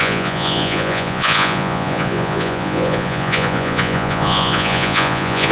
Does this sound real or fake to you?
fake